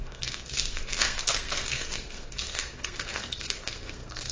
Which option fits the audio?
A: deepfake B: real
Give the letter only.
A